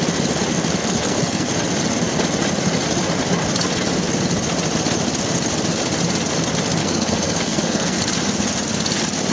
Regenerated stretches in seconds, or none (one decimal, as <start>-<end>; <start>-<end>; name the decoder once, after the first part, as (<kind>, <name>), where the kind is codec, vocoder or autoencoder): 0.8-1.5 (codec, SNAC); 6.8-8.0